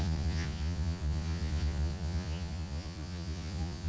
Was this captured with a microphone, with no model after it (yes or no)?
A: no